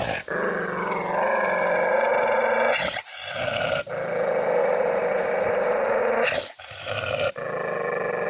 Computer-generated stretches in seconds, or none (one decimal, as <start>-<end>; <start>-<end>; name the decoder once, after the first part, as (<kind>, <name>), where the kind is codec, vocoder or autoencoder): 2.1-2.9 (vocoder, BigVGAN v2); 4.6-5.5